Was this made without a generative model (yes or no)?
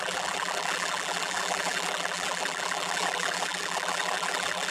no